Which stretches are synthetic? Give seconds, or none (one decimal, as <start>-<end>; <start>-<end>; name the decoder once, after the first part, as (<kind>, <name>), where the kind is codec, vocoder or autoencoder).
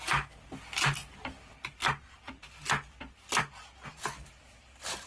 none